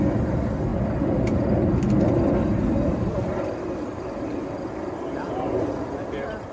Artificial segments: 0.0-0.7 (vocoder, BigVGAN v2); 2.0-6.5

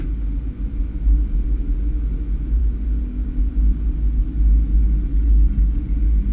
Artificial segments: 5.1-5.8 (codec, HILCodec)

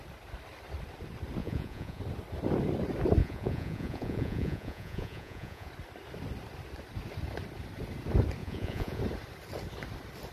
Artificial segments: 1.4-2.0 (vocoder, Vocos); 3.2-5.7; 8.4-9.0

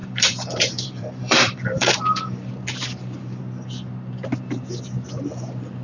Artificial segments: 0.0-2.5 (vocoder, BigVGAN v2)

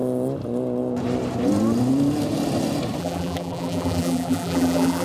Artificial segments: 3.0-5.0 (vocoder, BigVGAN v2)

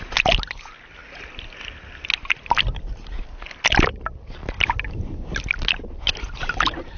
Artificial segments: none

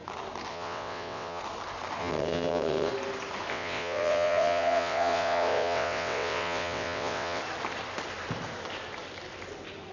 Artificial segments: 0.5-1.4 (vocoder, WaveNeXt); 2.0-2.9; 3.5-7.4

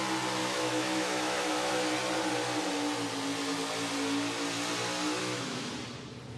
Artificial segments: 0.4-1.7 (autoencoder, DAC-VAE); 5.2-5.7